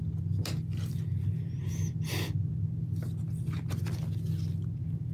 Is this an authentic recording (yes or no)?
yes